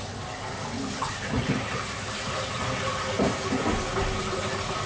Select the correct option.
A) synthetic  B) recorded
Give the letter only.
B